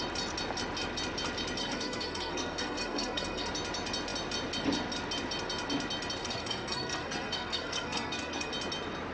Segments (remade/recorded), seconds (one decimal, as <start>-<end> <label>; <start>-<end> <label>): 0.0-1.6 recorded; 1.6-3.5 remade; 3.5-6.2 recorded; 6.2-8.5 remade; 8.5-9.1 recorded